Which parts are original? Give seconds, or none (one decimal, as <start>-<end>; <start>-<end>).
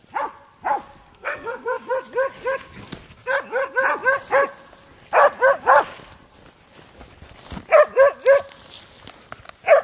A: 0.0-1.1; 1.9-9.8